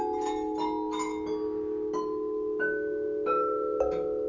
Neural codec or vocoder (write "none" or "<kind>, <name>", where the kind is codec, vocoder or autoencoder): none